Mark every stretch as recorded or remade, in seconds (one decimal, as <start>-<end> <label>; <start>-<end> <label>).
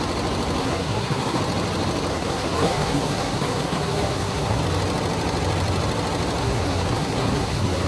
0.0-0.6 recorded; 0.6-1.4 remade; 1.4-2.1 recorded; 2.1-4.6 remade; 4.6-6.4 recorded; 6.4-7.9 remade